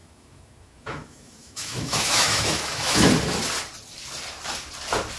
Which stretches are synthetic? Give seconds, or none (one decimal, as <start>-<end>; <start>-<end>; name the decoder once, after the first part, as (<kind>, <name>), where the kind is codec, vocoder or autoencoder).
0.0-3.1 (autoencoder, DAC-VAE)

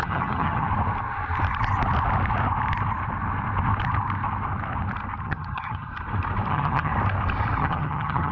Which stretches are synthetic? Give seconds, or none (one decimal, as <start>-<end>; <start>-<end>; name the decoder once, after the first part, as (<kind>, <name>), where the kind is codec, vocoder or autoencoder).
0.0-0.7 (vocoder, HiFi-GAN); 5.2-5.9; 6.5-6.9; 7.6-8.3